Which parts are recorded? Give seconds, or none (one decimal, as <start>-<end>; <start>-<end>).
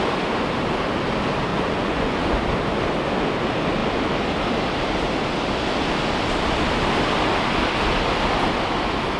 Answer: 0.0-1.5; 2.4-9.2